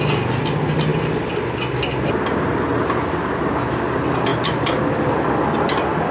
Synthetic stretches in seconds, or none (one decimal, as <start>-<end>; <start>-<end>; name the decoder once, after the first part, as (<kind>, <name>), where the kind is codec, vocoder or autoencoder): none